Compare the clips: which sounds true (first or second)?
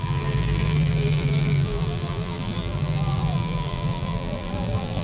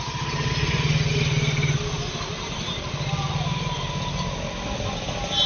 second